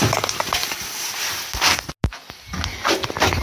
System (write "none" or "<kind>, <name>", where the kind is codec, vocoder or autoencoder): none